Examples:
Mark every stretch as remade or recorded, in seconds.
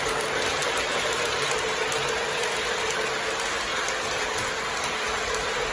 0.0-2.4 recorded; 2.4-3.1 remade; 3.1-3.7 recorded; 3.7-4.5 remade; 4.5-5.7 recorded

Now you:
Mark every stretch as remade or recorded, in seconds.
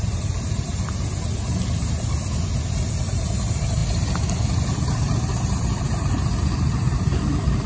0.0-0.7 remade; 0.7-3.0 recorded; 3.0-3.8 remade; 3.8-4.5 recorded; 4.5-7.7 remade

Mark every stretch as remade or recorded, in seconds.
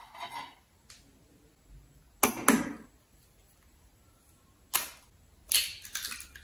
0.0-6.4 recorded